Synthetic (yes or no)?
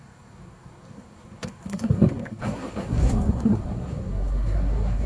yes